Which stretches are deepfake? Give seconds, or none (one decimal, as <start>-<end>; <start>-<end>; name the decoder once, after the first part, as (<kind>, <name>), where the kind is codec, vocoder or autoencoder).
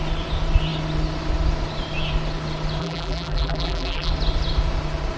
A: 2.8-4.1 (vocoder, BigVGAN v2)